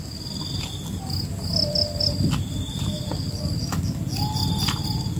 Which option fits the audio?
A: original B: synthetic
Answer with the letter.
A